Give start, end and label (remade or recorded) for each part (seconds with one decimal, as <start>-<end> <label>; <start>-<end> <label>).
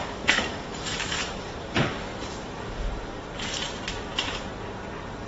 0.0-4.5 remade; 4.5-5.3 recorded